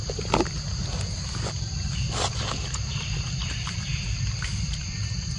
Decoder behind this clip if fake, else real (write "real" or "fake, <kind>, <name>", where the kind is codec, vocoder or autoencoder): real